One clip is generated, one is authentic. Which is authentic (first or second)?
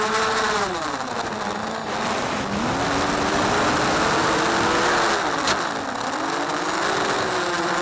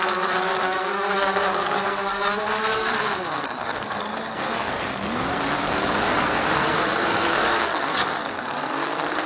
first